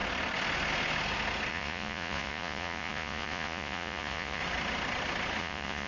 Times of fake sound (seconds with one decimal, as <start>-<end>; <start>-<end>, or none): 1.5-4.4; 5.4-5.9